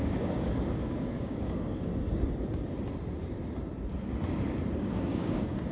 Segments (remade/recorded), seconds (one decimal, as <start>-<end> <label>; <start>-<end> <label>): 0.0-1.9 remade; 1.9-4.8 recorded; 4.8-5.7 remade